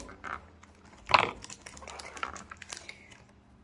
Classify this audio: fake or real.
real